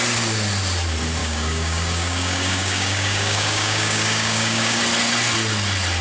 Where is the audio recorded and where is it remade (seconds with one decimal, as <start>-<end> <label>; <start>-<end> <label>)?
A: 0.0-1.2 recorded; 1.2-4.8 remade; 4.8-6.0 recorded

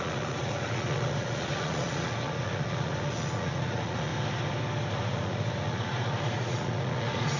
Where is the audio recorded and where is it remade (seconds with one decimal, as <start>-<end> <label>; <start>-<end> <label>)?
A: 0.0-4.1 remade; 4.1-4.9 recorded; 4.9-7.4 remade

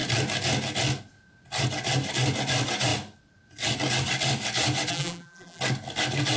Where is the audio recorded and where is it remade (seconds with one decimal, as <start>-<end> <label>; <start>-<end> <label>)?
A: 0.0-4.9 recorded; 4.9-5.6 remade; 5.6-6.4 recorded

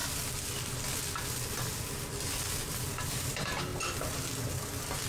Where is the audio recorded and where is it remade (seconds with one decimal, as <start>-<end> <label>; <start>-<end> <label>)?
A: 0.0-2.9 recorded; 2.9-3.7 remade; 3.7-5.1 recorded

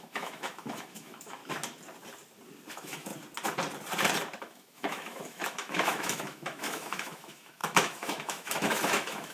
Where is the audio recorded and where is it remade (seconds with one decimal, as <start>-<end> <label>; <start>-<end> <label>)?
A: 0.0-1.4 remade; 1.4-2.7 recorded; 2.7-3.1 remade; 3.1-4.4 recorded; 4.4-9.3 remade

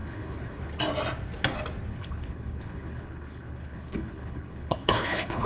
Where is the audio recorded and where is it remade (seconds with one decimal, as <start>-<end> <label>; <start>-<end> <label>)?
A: 0.0-0.7 remade; 0.7-1.9 recorded; 1.9-5.5 remade

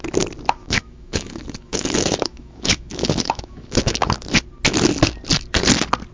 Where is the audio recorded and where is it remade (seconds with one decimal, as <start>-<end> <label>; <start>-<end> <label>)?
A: 0.0-0.6 recorded; 0.6-4.1 remade; 4.1-6.1 recorded